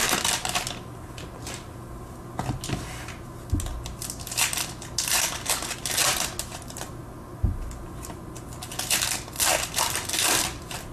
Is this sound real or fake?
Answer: real